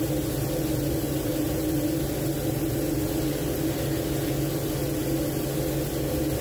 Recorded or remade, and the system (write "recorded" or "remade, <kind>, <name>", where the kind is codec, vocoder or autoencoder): recorded